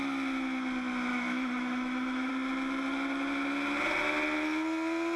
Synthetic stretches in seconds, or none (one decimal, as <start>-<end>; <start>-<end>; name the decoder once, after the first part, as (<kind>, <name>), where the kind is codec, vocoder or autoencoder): 1.1-2.3 (autoencoder, DAC-VAE)